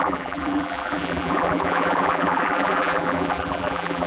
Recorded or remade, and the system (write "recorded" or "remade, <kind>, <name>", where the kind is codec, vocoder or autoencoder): remade, vocoder, BigVGAN v2